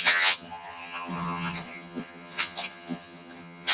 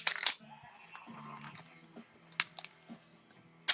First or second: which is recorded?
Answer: second